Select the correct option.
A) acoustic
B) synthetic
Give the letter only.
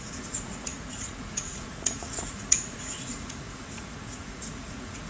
B